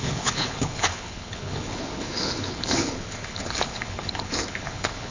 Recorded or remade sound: remade